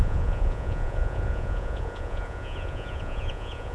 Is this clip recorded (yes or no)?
no